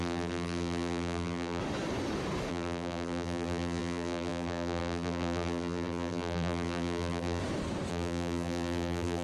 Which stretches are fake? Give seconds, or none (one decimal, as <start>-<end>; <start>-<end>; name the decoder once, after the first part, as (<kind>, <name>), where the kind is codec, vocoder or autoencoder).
0.0-1.6 (vocoder, BigVGAN v2); 2.5-7.4; 7.9-9.2